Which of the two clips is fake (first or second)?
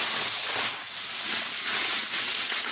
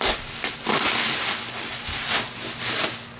first